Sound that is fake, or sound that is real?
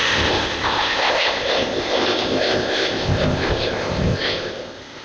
fake